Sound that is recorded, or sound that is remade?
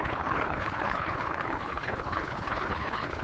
remade